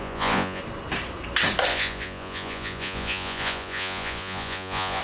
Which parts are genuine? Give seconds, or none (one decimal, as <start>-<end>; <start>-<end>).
0.6-1.7

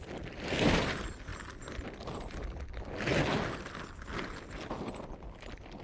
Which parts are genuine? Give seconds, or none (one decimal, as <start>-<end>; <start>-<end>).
0.0-5.8

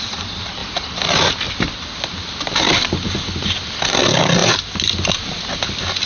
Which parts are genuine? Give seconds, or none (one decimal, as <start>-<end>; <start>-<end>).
0.0-6.1

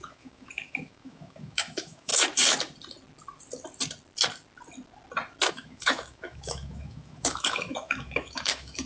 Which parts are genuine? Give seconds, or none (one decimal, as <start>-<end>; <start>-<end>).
2.1-5.5